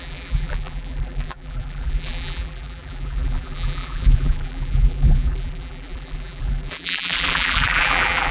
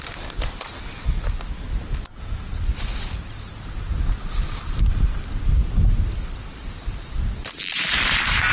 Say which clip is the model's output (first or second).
first